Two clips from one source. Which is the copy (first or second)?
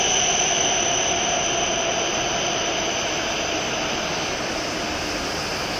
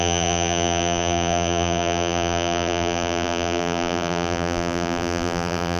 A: second